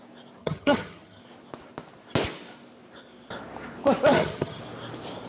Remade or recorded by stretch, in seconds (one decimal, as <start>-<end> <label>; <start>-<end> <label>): 0.0-0.4 recorded; 0.4-1.2 remade; 1.2-4.1 recorded; 4.1-4.6 remade; 4.6-5.3 recorded